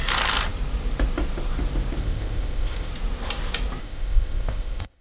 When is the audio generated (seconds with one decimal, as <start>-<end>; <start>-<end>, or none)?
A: 2.0-2.9; 3.8-5.0